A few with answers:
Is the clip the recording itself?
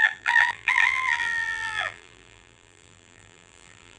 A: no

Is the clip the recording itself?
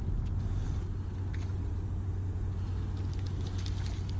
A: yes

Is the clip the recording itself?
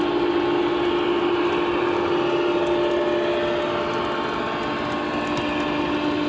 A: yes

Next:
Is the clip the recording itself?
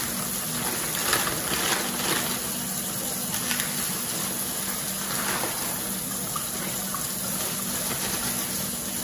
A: yes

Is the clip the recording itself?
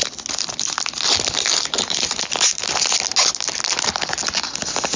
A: yes